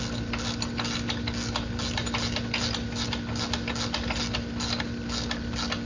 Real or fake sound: real